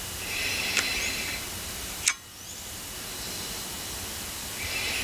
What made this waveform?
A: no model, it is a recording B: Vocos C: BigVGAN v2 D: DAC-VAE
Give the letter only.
A